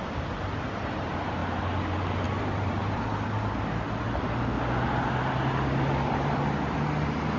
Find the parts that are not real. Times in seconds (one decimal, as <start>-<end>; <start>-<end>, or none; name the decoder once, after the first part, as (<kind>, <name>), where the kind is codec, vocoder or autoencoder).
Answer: 0.0-1.4 (vocoder, BigVGAN v2); 2.4-3.1